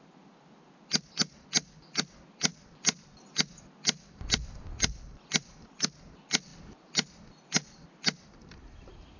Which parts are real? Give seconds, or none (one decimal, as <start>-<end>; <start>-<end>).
0.0-9.2